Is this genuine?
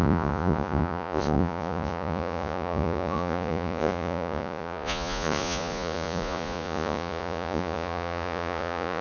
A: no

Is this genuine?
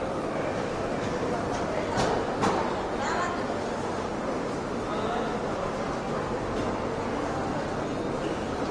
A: yes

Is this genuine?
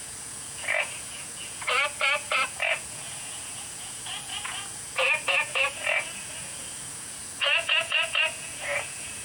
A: no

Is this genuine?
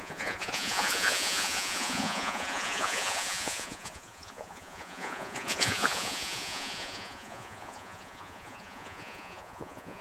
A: no